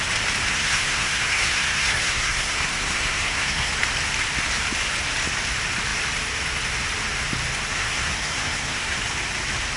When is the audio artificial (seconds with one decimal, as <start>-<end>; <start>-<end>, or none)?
0.5-3.7; 7.7-9.0